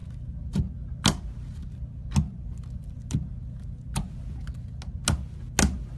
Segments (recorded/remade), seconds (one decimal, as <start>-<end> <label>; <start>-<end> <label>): 0.0-6.0 recorded